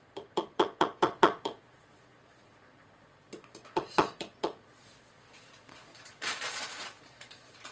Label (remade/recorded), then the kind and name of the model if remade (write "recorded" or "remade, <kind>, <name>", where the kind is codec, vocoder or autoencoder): remade, vocoder, Vocos